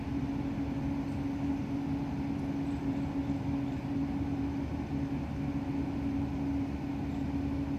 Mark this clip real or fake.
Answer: real